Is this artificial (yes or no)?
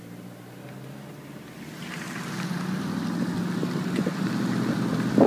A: no